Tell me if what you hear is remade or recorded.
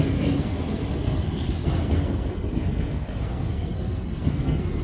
remade